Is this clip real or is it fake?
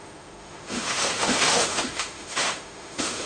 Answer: fake